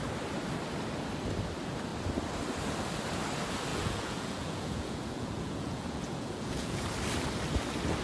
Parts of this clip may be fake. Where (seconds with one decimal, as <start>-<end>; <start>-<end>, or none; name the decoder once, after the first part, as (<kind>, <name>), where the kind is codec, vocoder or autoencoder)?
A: 3.7-6.8 (vocoder, Vocos)